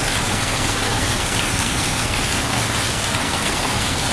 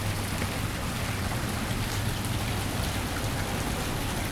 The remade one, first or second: first